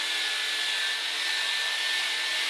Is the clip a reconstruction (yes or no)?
no